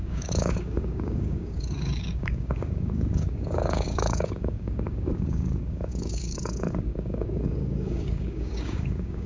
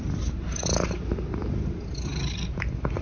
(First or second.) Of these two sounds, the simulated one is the first